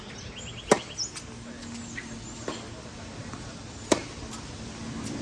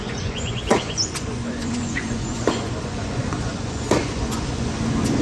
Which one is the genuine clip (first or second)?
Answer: first